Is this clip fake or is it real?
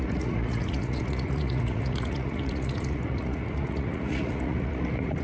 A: fake